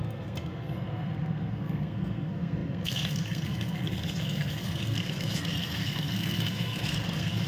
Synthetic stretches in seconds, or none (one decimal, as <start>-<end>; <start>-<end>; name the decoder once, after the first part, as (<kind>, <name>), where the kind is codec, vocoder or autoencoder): 0.0-7.5 (codec, SNAC)